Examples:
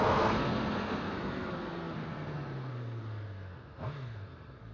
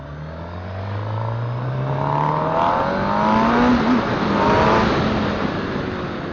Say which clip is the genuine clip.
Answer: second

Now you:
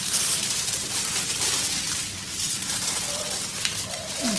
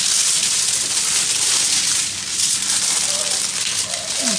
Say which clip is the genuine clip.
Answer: second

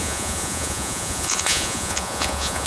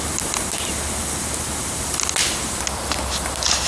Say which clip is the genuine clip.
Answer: second